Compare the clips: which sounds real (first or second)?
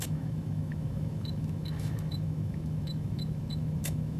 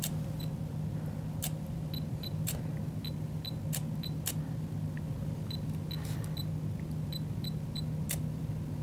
second